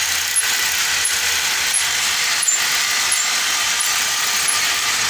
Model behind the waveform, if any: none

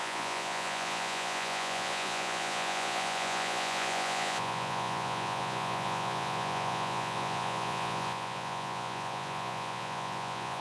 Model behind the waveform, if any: vocoder, Vocos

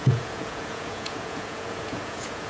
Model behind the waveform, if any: vocoder, Vocos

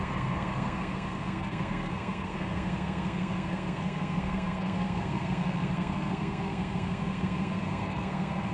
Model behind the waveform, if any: codec, SNAC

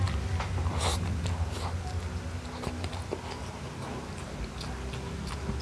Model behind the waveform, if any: none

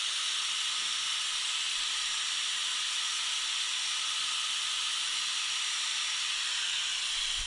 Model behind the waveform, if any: none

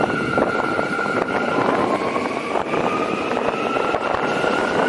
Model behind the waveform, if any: none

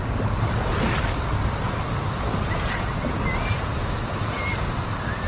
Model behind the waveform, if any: none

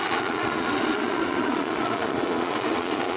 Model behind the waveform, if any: vocoder, Vocos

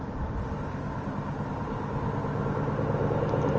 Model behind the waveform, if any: none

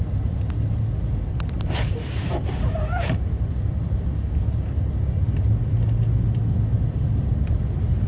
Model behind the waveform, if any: none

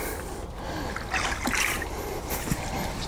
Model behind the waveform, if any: none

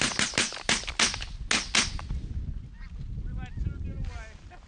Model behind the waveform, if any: none